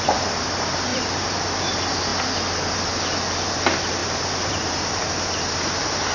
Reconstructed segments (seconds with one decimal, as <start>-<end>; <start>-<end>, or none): 0.9-1.6; 4.0-6.1